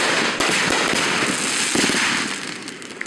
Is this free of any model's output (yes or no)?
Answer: yes